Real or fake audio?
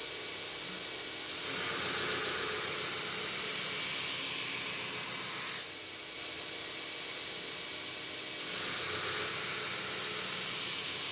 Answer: real